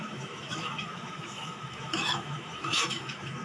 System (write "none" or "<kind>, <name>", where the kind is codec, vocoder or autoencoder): autoencoder, DAC-VAE